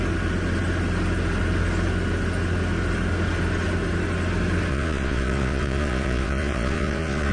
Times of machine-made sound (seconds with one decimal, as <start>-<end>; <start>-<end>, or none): 4.7-7.3